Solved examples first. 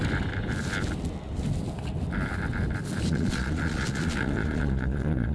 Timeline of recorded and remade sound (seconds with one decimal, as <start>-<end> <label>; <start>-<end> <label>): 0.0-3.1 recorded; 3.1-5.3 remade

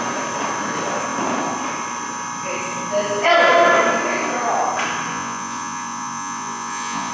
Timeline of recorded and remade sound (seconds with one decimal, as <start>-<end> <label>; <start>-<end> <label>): 0.0-5.1 recorded; 5.1-7.1 remade

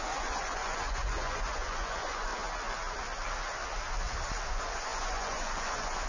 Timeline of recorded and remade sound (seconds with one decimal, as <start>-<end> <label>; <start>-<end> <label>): 0.0-2.3 remade; 2.3-4.5 recorded; 4.5-6.1 remade

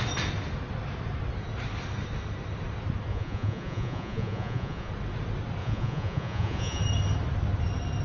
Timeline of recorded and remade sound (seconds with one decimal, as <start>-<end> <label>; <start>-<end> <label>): 0.0-3.1 recorded; 3.1-4.9 remade; 4.9-5.6 recorded; 5.6-6.8 remade; 6.8-8.0 recorded

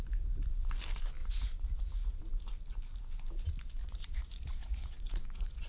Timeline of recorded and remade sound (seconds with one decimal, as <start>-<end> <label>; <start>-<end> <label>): 0.0-1.2 recorded; 1.2-2.2 remade; 2.2-3.8 recorded; 3.8-5.7 remade

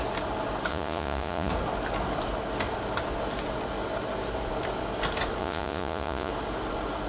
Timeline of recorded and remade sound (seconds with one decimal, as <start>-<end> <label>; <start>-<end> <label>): 0.0-0.7 recorded; 0.7-1.5 remade; 1.5-5.4 recorded; 5.4-6.3 remade; 6.3-7.1 recorded

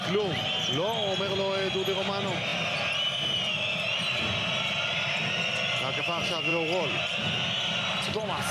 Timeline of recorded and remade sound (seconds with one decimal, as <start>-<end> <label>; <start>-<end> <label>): 0.0-8.5 recorded

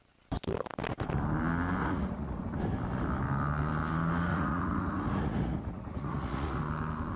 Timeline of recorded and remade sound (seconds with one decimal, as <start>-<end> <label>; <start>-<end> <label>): 0.0-1.8 recorded; 1.8-2.4 remade; 2.4-4.3 recorded; 4.3-6.6 remade; 6.6-7.2 recorded